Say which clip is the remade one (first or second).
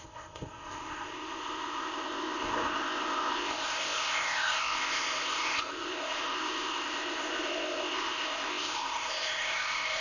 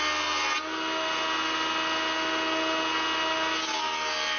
first